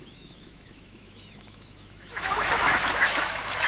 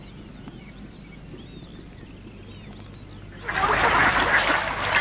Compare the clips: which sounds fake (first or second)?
first